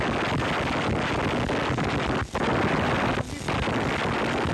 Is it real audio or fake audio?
real